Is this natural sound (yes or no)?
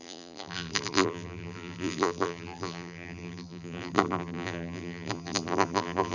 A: no